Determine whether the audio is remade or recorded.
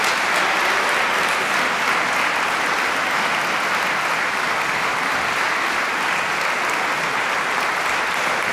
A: recorded